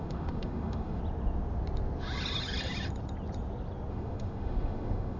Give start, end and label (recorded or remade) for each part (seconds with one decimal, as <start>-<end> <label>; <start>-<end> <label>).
0.0-1.0 remade; 1.0-3.9 recorded; 3.9-5.2 remade